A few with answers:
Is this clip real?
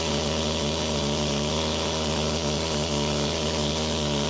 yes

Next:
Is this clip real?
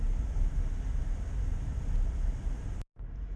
yes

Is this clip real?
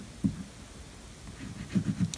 yes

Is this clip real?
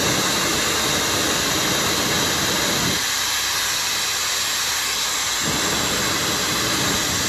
yes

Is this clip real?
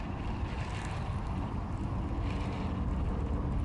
yes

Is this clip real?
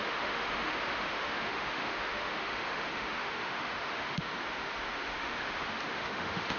no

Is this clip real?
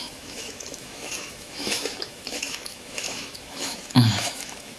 no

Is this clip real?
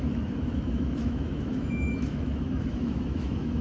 no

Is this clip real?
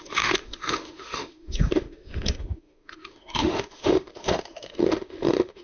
no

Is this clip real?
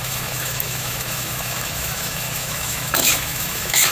no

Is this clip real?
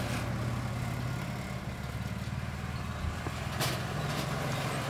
yes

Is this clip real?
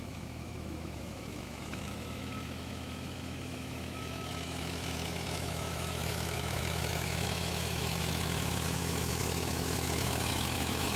no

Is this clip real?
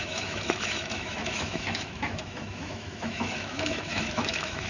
no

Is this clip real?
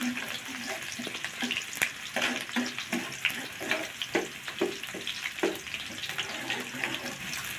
yes